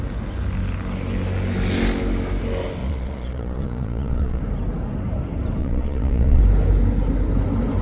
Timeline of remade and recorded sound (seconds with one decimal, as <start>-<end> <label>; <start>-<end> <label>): 0.0-2.8 recorded; 2.8-4.4 remade; 4.4-5.6 recorded; 5.6-6.4 remade; 6.4-7.8 recorded